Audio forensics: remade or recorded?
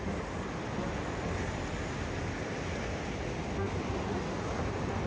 recorded